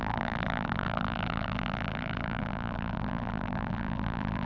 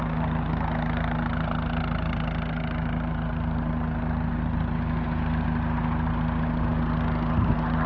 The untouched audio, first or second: second